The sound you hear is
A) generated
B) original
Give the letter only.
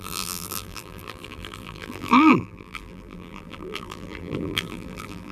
A